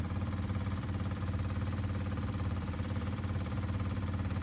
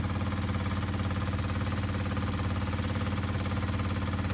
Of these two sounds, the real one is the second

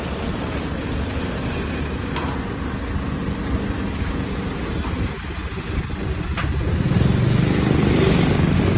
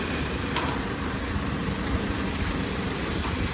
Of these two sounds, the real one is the first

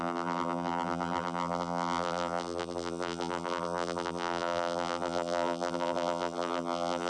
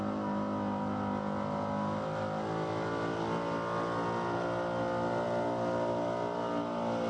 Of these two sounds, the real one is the second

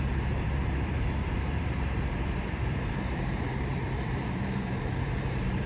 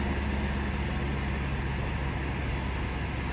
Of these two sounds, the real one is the second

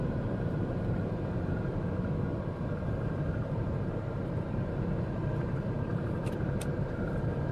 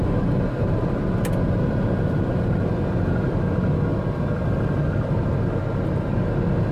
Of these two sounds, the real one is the second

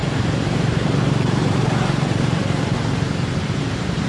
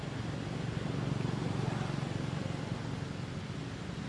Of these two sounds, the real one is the second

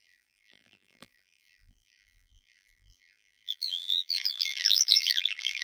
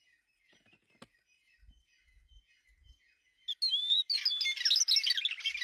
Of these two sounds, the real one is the second